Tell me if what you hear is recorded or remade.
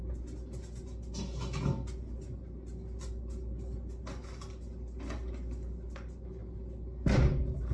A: recorded